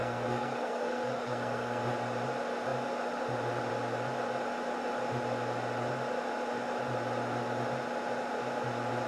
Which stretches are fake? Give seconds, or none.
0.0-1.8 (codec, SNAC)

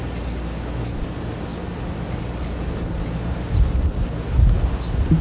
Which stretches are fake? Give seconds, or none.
0.0-1.5 (vocoder, BigVGAN v2); 4.6-5.2

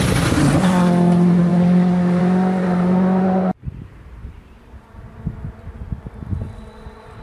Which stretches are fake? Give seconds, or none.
1.5-2.2 (codec, DAC)

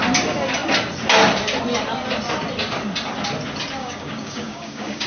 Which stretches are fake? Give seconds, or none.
3.8-5.1 (codec, DAC)

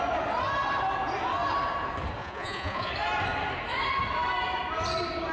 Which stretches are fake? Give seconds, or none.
2.2-2.9 (vocoder, Vocos)

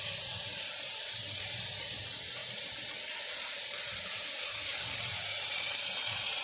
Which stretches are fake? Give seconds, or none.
0.0-1.2 (vocoder, BigVGAN v2); 2.0-6.4

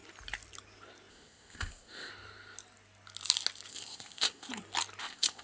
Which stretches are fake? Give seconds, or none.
1.1-2.1 (codec, ZipCodec); 3.7-4.5; 5.0-5.4